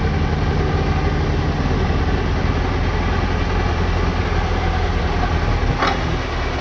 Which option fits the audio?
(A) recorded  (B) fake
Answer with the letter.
A